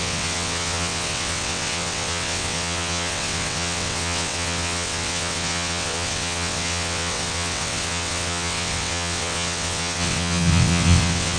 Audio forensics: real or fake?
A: fake